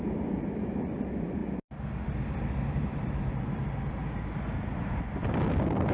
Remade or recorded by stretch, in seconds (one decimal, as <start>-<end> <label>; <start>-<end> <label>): 0.0-1.4 remade; 1.4-2.7 recorded; 2.7-4.0 remade; 4.0-5.9 recorded